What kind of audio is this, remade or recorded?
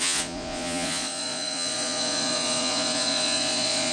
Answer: remade